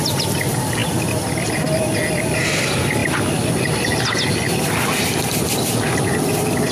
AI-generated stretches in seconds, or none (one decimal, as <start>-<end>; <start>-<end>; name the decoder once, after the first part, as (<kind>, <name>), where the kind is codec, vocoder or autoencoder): 0.8-1.5 (vocoder, BigVGAN v2)